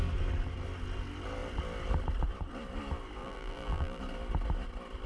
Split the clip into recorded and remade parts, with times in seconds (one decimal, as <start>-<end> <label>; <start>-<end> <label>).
0.0-3.2 recorded; 3.2-4.0 remade; 4.0-5.1 recorded